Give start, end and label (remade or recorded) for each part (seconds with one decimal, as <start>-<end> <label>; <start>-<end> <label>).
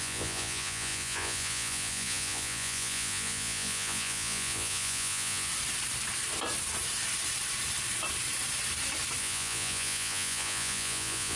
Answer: 0.0-5.5 remade; 5.5-9.2 recorded; 9.2-11.4 remade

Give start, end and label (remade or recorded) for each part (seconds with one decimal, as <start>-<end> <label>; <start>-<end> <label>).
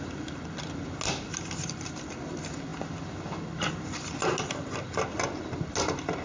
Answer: 0.0-6.2 recorded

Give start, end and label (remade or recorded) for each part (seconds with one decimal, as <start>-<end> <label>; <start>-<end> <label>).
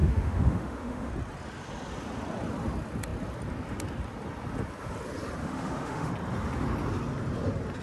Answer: 0.0-1.1 remade; 1.1-5.4 recorded; 5.4-6.1 remade; 6.1-7.8 recorded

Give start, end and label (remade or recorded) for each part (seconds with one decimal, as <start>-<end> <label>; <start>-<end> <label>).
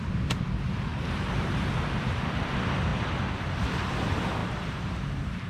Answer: 0.0-0.9 recorded; 0.9-1.5 remade; 1.5-4.4 recorded; 4.4-5.5 remade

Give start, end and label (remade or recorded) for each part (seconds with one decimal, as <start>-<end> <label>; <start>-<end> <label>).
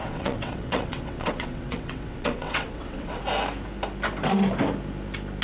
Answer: 0.0-3.2 remade; 3.2-5.4 recorded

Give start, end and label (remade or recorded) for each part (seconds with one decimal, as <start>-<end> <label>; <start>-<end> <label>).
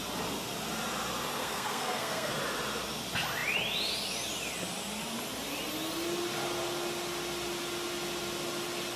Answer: 0.0-1.4 recorded; 1.4-2.3 remade; 2.3-9.0 recorded